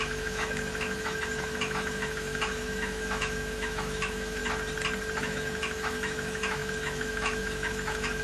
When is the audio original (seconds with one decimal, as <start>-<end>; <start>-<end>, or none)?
4.4-5.2